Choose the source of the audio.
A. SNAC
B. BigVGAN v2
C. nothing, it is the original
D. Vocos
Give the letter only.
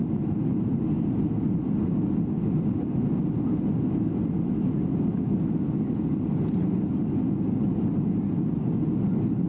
C